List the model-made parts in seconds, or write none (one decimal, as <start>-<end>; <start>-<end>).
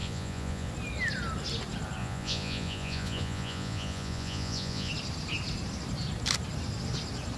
0.0-0.7; 2.0-4.9